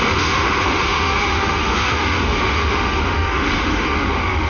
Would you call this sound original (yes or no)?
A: no